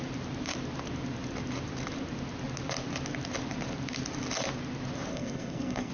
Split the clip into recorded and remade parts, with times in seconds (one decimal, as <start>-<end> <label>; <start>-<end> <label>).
0.0-5.1 recorded; 5.1-5.9 remade